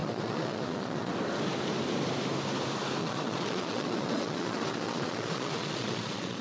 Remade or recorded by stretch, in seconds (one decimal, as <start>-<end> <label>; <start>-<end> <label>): 0.0-1.1 remade; 1.1-3.0 recorded; 3.0-6.4 remade